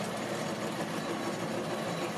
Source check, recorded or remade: recorded